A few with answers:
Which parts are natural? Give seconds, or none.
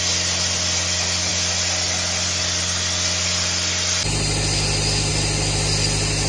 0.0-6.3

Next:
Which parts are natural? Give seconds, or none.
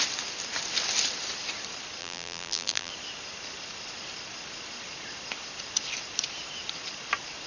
0.0-2.0; 2.9-7.5